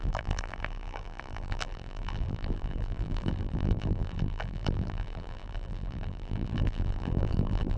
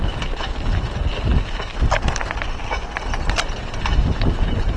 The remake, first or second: first